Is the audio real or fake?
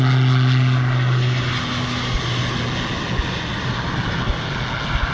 real